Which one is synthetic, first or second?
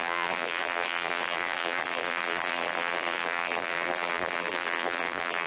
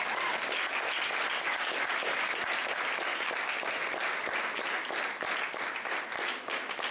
first